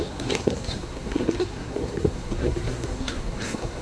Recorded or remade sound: remade